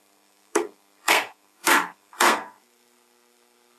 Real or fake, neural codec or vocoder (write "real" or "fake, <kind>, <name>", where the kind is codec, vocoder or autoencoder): fake, codec, SNAC